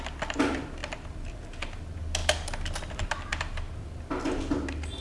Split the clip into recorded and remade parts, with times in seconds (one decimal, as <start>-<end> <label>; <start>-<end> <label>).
0.0-5.0 recorded